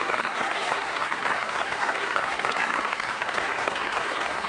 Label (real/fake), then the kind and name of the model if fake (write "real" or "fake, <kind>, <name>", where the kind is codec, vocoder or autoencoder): fake, codec, SNAC